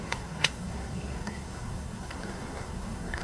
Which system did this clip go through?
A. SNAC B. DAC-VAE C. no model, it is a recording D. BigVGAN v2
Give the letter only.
A